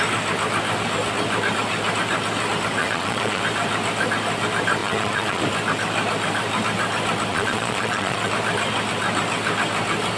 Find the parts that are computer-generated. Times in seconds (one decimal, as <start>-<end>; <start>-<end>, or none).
2.8-3.4; 4.8-5.4; 7.3-8.3